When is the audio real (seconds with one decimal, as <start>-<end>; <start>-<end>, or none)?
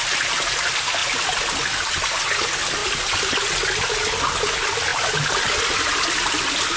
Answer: 0.0-6.8